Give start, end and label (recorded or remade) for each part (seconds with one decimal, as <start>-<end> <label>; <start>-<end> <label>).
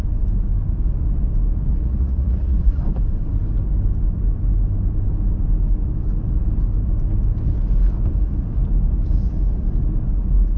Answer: 0.0-1.7 recorded; 1.7-2.8 remade; 2.8-10.6 recorded